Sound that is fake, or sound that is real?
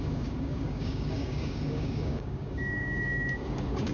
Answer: fake